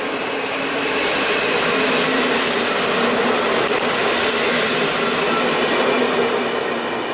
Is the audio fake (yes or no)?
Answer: no